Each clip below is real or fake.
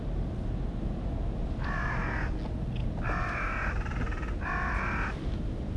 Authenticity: real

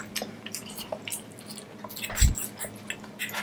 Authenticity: real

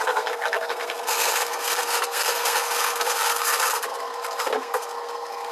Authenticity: fake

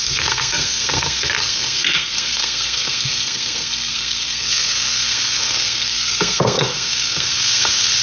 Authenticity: fake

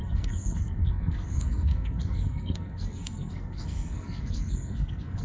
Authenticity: fake